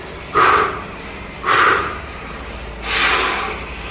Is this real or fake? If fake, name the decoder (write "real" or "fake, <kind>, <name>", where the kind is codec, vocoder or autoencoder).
real